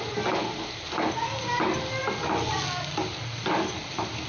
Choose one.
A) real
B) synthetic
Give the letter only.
A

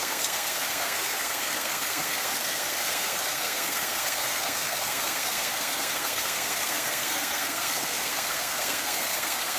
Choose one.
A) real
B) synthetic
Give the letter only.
B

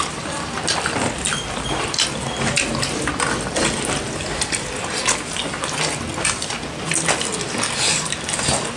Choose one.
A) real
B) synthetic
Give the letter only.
A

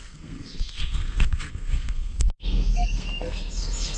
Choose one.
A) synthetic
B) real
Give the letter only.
A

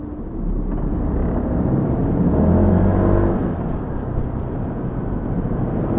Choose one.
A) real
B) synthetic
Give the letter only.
A